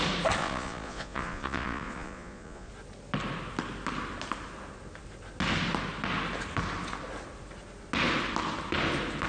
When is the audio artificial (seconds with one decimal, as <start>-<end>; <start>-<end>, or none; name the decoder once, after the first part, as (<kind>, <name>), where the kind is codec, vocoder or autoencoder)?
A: 0.4-2.7 (vocoder, Vocos)